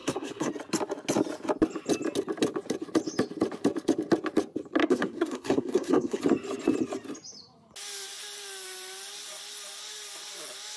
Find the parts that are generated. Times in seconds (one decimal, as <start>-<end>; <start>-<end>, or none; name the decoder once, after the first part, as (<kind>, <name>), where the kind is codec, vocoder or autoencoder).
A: 0.0-0.5 (codec, SNAC); 4.8-6.2